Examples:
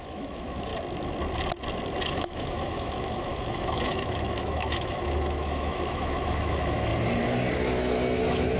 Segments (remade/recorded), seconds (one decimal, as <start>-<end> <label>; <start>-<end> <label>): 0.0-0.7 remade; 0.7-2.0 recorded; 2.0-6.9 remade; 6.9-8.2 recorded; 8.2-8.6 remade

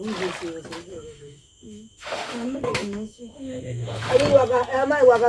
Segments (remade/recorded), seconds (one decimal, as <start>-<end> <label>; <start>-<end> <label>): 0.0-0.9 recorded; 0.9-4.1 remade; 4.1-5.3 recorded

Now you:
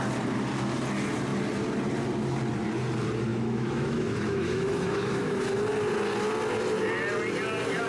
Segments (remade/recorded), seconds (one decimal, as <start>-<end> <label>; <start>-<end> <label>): 0.0-3.3 recorded; 3.3-5.4 remade; 5.4-7.9 recorded